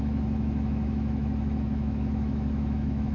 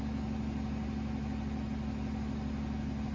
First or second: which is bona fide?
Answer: second